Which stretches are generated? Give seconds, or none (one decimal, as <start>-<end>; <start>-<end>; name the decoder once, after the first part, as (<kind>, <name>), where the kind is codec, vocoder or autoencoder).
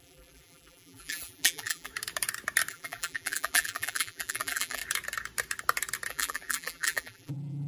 0.0-1.9 (vocoder, BigVGAN v2); 2.7-4.8; 6.1-7.7